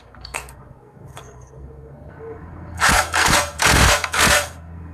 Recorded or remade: remade